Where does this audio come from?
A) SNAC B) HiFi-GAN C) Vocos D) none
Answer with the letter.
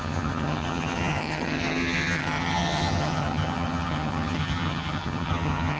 B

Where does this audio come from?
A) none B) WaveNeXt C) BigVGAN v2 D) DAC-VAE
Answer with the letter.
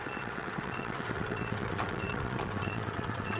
B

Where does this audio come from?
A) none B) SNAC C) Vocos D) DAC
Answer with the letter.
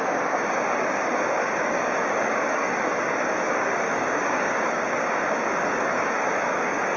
D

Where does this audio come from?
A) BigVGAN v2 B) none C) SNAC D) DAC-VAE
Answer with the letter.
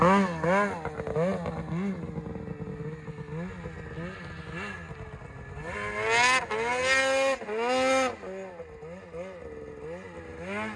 B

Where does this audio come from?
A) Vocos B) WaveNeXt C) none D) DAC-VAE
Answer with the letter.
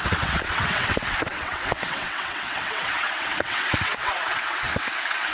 B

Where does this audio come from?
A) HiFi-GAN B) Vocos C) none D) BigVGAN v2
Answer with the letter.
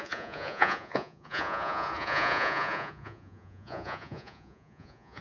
B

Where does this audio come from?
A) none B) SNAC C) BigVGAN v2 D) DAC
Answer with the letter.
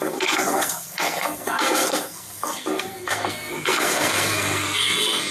B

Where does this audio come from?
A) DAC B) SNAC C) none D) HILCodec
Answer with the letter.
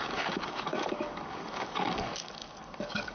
A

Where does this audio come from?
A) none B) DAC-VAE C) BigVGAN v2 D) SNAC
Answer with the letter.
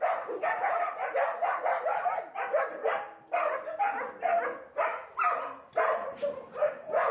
A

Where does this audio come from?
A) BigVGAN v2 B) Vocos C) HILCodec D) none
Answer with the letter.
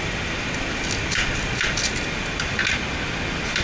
D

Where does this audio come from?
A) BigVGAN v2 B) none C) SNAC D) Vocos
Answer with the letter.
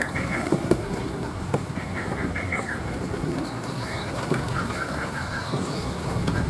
C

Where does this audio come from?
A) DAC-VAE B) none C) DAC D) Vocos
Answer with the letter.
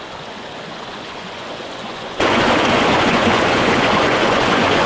D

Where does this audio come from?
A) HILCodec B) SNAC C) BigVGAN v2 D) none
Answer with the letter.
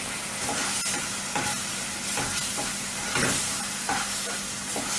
D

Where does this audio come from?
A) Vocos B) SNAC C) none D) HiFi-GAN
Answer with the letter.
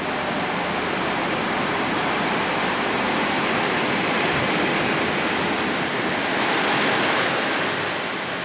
C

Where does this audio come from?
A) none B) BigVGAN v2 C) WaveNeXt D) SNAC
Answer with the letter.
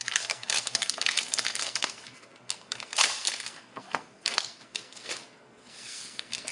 D